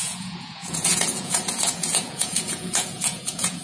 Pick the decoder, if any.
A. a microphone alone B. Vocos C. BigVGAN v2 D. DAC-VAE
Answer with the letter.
B